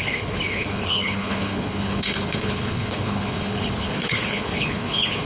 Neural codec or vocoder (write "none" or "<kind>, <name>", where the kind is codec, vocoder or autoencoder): codec, HILCodec